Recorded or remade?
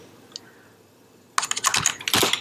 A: recorded